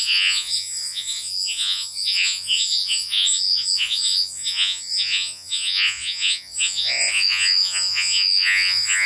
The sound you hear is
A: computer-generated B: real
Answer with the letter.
A